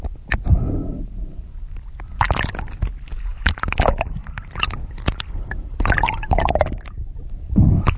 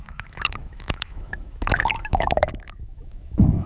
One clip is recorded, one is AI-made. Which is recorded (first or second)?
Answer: first